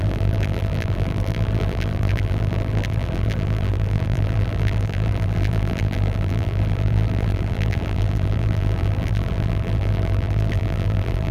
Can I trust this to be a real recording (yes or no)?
no